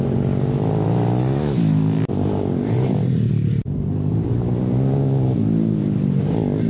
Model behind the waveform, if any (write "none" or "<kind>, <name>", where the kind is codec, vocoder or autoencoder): none